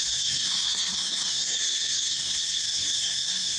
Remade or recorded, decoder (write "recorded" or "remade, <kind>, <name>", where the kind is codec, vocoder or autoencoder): remade, codec, SNAC